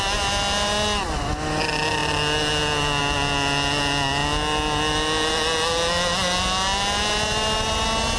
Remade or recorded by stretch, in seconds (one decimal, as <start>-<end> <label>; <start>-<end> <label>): 0.0-8.2 recorded